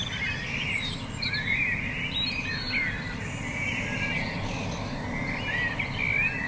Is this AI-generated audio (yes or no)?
no